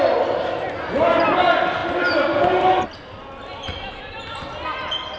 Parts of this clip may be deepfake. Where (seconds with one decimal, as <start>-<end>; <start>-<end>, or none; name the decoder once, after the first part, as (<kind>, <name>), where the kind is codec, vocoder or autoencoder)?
none